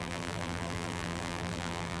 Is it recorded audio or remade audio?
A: remade